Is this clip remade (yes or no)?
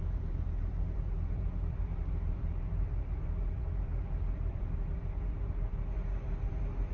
yes